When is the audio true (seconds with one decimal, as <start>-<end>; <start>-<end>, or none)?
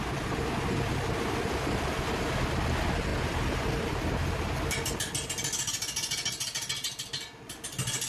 0.0-8.1